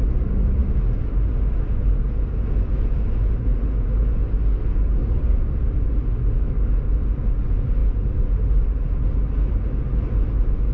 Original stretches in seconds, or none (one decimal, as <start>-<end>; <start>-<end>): 0.0-5.0; 5.9-10.7